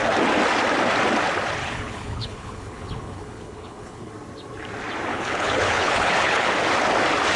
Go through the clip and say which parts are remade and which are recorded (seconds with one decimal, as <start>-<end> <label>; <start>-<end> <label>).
0.0-1.6 recorded; 1.6-4.1 remade; 4.1-5.1 recorded; 5.1-6.5 remade; 6.5-7.4 recorded